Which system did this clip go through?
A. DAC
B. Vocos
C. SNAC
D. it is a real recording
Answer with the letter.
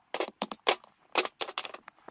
D